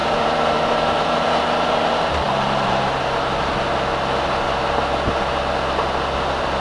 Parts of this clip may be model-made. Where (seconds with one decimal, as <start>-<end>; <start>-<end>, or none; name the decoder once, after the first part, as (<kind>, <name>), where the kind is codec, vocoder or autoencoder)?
0.0-3.0 (vocoder, BigVGAN v2)